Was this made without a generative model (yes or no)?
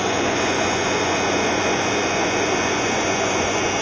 no